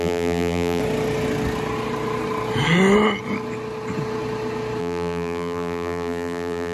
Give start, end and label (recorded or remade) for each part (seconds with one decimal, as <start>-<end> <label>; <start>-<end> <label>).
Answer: 0.0-0.8 remade; 0.8-4.8 recorded; 4.8-6.7 remade